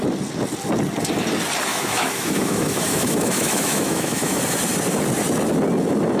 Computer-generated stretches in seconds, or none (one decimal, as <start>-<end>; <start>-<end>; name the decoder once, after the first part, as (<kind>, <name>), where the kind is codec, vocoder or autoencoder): 1.7-4.4 (autoencoder, DAC-VAE)